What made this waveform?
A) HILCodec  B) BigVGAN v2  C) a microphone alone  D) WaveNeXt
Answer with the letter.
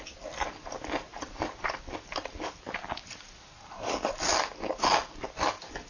C